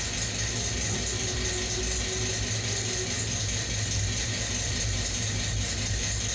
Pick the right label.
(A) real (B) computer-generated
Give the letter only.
A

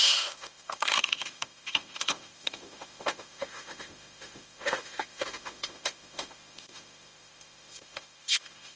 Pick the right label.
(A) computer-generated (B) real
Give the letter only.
A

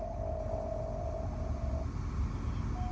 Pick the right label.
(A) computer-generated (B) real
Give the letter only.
B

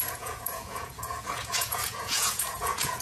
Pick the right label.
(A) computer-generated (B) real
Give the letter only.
A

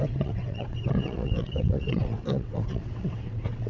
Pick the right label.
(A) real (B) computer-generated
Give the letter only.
B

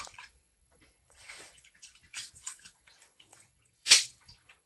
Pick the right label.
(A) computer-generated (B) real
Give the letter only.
A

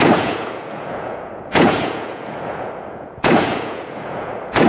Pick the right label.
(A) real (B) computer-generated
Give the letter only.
B